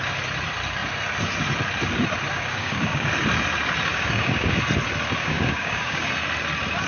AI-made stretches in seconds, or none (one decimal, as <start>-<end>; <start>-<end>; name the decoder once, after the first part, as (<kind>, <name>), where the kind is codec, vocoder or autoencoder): 2.3-3.1 (codec, DAC); 3.9-4.6; 5.2-6.1

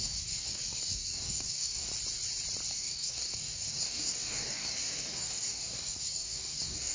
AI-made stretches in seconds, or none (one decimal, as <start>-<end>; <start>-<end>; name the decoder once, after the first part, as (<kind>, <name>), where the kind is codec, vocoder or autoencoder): 0.0-1.9 (codec, DAC); 2.7-6.9